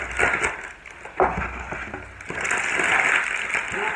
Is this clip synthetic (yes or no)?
no